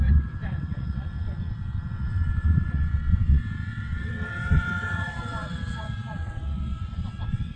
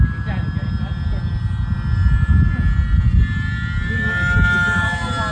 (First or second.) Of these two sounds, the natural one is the second